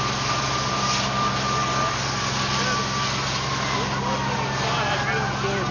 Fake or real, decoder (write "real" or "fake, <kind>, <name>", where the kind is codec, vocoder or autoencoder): real